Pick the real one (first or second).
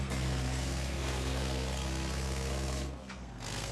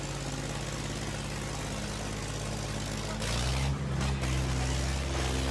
second